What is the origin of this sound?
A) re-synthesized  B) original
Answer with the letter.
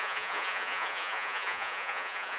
A